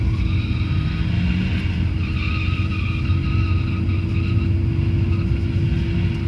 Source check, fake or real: real